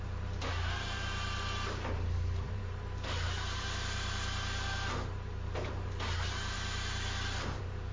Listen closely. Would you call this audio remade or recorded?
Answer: remade